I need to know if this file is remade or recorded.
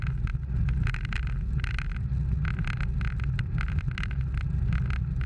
recorded